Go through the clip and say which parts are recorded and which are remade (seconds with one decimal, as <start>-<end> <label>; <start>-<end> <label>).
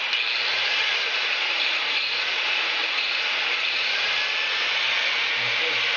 0.0-0.5 recorded; 0.5-4.1 remade; 4.1-6.0 recorded